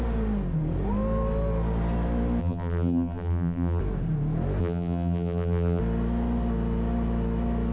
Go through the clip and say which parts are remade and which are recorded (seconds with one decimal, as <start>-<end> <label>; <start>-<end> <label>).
0.0-2.4 recorded; 2.4-3.8 remade; 3.8-4.6 recorded; 4.6-5.8 remade; 5.8-7.7 recorded